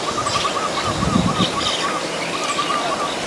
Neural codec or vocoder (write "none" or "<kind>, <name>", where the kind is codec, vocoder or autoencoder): none